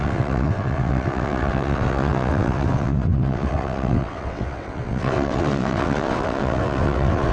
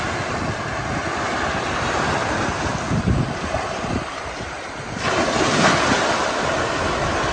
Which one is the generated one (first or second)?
first